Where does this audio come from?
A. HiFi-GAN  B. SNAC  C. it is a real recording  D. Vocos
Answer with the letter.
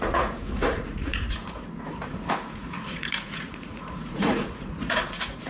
D